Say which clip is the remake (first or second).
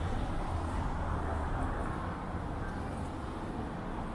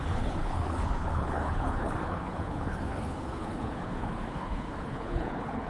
second